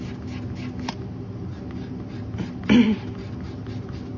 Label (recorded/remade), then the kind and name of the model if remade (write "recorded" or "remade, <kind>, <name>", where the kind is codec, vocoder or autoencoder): recorded